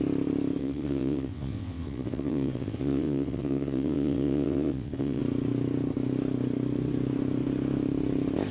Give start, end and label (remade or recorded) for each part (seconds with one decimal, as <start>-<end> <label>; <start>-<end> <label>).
0.0-0.6 recorded; 0.6-5.2 remade; 5.2-8.5 recorded